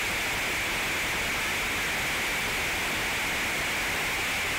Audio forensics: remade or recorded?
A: recorded